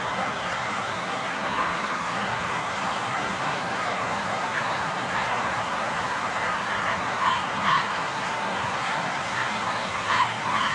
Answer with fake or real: fake